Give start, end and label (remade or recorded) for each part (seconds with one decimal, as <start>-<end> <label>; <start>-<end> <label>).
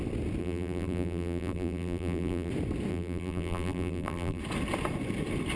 0.0-0.4 recorded; 0.4-2.5 remade; 2.5-2.9 recorded; 2.9-4.4 remade; 4.4-5.6 recorded